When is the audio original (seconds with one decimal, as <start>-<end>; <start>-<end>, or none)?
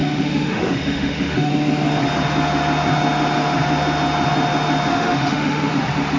1.5-4.9; 5.7-6.2